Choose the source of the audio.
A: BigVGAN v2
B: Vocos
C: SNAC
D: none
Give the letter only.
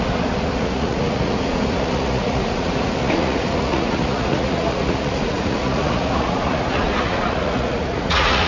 B